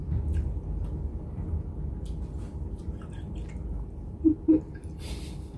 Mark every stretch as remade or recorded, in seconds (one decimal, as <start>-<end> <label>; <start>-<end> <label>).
0.0-5.6 remade